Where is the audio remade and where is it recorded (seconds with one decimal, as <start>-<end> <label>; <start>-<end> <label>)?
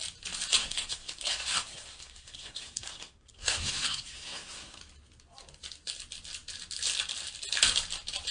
0.0-0.6 recorded; 0.6-4.8 remade; 4.8-8.3 recorded